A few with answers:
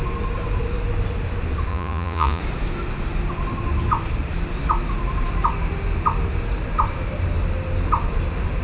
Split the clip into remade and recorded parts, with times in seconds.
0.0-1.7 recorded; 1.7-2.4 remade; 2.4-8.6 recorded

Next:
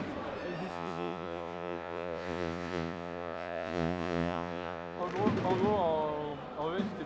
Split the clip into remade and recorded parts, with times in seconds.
0.0-0.7 recorded; 0.7-5.0 remade; 5.0-7.1 recorded

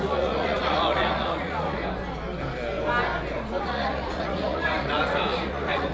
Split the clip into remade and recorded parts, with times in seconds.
0.0-1.8 remade; 1.8-3.6 recorded; 3.6-5.9 remade

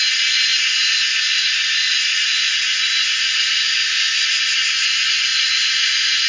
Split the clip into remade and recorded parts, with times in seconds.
0.0-6.3 recorded